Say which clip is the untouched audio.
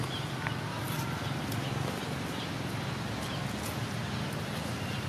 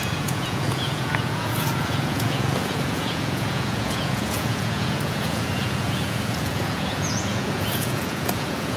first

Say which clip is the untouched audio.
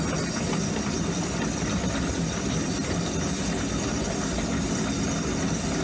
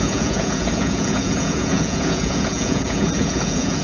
first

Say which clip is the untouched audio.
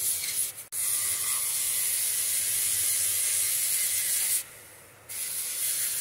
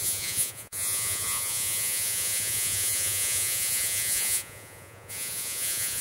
first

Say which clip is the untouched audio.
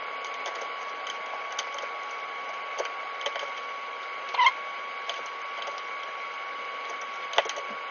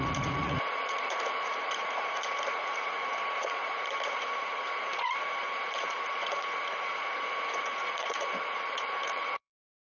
first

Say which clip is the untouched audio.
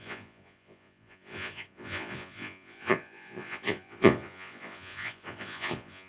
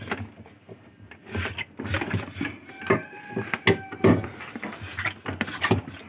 second